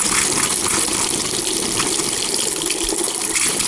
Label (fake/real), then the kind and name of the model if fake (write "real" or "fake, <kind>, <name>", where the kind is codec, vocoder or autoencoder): real